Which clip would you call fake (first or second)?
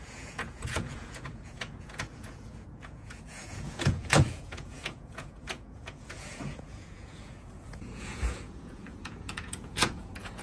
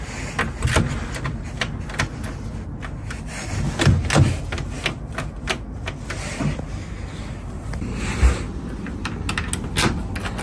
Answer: first